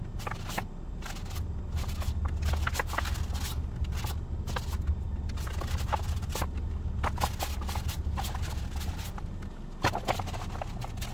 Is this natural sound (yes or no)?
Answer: yes